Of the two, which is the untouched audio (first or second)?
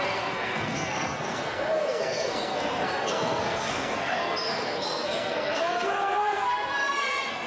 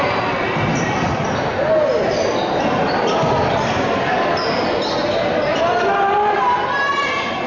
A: second